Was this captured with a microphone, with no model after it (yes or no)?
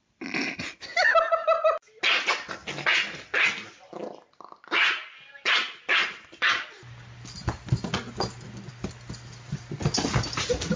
yes